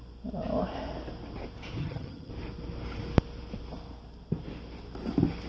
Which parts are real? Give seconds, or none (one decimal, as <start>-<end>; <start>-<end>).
0.0-1.8; 2.3-5.5